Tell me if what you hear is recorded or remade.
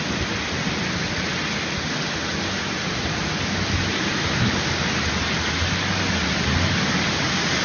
recorded